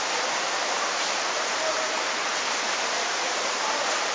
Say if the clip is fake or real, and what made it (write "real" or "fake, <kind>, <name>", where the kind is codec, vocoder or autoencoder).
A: fake, vocoder, BigVGAN v2